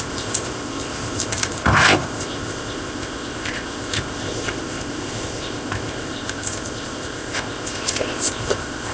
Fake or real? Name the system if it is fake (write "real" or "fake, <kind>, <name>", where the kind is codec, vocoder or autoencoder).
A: fake, codec, ZipCodec